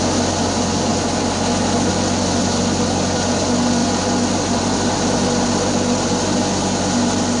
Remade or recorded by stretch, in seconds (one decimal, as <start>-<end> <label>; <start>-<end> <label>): 0.0-7.4 recorded